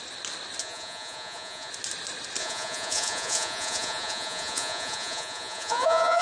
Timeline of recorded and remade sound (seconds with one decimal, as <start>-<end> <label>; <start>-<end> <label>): 0.0-0.6 recorded; 0.6-1.7 remade; 1.7-2.4 recorded; 2.4-6.2 remade